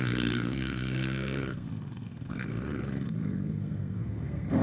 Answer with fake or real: fake